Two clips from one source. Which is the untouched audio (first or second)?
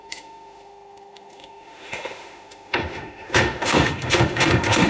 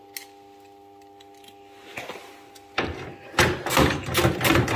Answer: second